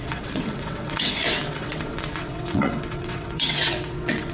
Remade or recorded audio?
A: remade